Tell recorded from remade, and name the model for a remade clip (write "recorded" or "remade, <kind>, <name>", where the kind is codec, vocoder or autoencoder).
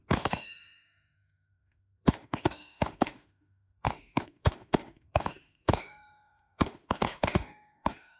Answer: remade, autoencoder, DAC-VAE